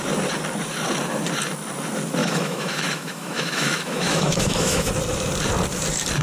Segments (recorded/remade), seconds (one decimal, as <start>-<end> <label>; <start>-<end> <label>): 0.0-2.2 recorded; 2.2-4.9 remade; 4.9-6.2 recorded